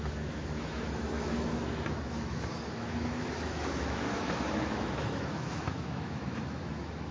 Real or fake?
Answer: fake